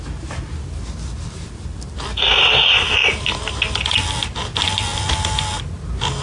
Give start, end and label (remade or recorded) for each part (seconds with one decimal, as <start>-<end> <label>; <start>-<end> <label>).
0.0-6.2 recorded